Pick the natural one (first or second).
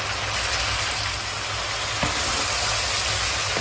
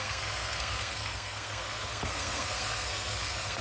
first